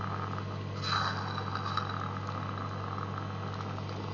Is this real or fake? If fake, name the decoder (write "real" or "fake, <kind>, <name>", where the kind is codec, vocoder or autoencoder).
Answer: real